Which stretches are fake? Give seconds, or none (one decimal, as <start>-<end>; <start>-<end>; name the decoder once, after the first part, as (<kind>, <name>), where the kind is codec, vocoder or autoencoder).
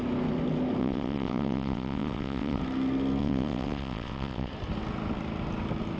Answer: 0.8-2.6 (vocoder, WaveNeXt); 3.2-4.5